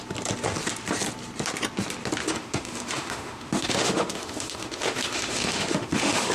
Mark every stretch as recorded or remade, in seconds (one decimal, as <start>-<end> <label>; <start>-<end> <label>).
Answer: 0.0-2.2 recorded; 2.2-6.3 remade